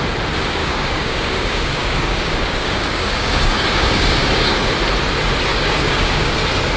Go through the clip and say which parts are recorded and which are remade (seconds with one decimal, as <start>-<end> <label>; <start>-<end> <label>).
0.0-0.6 recorded; 0.6-4.7 remade; 4.7-5.5 recorded; 5.5-6.3 remade; 6.3-6.8 recorded